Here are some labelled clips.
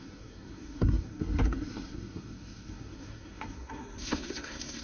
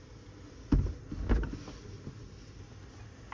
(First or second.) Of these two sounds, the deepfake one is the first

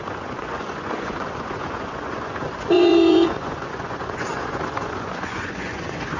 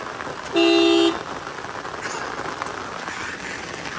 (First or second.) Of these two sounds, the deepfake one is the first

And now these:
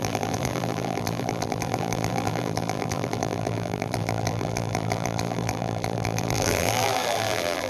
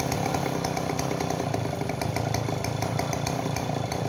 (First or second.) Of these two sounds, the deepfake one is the first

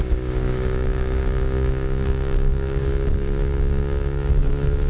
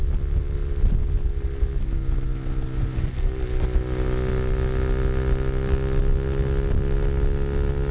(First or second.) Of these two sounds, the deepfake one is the first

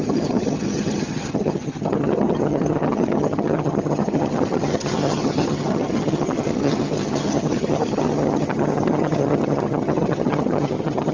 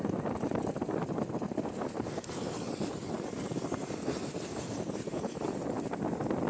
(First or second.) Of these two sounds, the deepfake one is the first